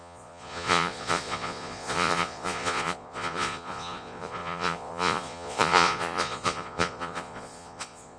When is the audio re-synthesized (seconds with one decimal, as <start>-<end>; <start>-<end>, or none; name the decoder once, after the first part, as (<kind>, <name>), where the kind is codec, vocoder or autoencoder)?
0.0-8.2 (vocoder, Vocos)